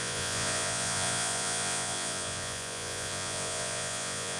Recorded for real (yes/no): no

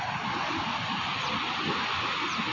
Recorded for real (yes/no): yes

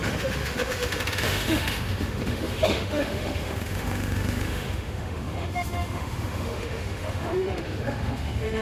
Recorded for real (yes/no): no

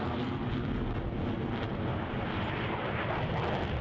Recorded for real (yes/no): yes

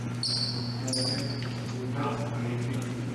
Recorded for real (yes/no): yes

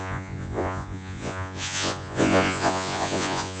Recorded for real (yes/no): no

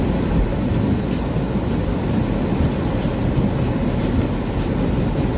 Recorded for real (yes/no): yes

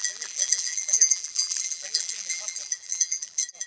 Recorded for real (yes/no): no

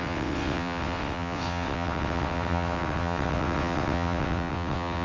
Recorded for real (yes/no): no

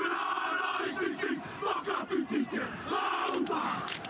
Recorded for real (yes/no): no